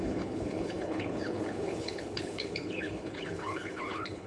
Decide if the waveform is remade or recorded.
remade